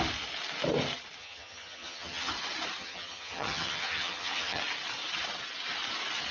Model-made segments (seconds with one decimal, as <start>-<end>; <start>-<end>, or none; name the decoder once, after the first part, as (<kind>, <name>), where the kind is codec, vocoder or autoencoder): 1.2-2.3 (vocoder, HiFi-GAN); 2.8-4.6

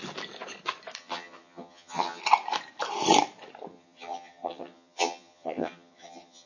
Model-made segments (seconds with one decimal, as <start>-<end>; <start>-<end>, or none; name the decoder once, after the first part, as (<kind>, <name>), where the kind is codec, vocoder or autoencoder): 1.0-2.2 (vocoder, HiFi-GAN); 3.7-6.5

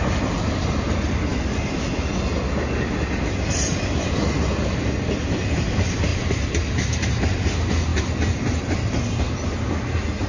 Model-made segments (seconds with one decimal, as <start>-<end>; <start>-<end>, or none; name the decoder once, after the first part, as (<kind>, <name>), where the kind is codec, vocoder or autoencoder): none